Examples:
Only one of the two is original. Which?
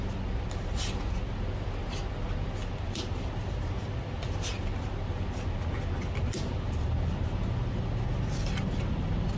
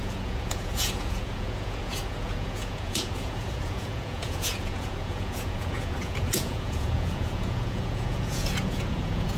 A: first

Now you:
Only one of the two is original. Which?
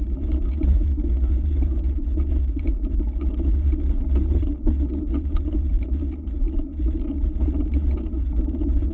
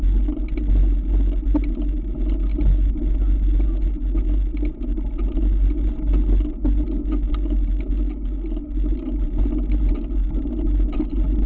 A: second